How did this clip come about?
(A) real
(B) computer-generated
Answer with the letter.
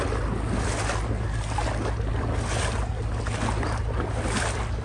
A